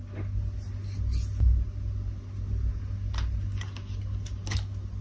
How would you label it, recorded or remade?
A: recorded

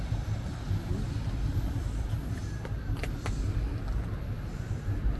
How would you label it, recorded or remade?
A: recorded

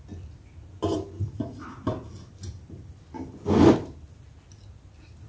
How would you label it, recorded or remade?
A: recorded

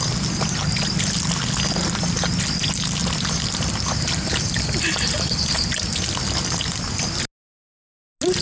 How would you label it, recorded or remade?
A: recorded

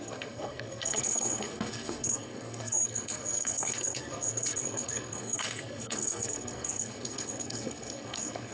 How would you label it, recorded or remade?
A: remade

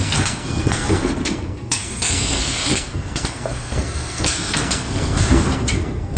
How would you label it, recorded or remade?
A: remade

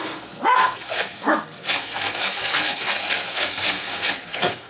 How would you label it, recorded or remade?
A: remade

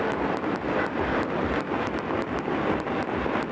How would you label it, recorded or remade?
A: recorded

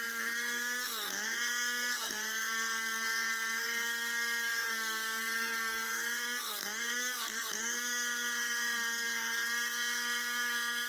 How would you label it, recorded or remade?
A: remade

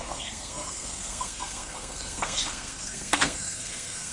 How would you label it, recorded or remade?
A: remade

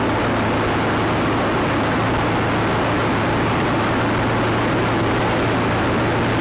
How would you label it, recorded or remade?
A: recorded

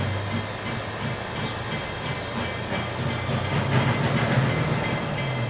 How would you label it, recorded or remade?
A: recorded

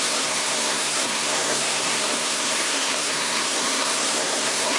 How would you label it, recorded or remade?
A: remade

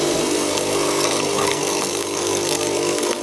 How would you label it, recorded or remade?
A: remade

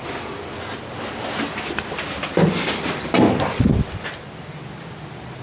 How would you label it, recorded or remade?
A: recorded